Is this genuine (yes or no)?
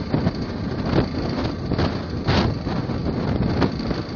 yes